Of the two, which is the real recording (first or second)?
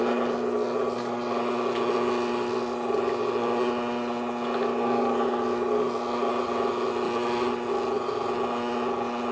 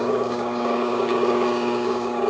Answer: first